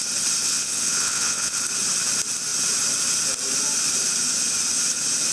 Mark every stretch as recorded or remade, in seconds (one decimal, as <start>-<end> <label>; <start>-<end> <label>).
0.0-0.4 recorded; 0.4-1.6 remade; 1.6-5.3 recorded